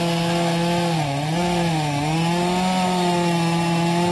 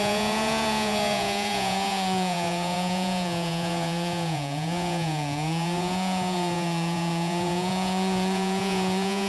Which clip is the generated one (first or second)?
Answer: second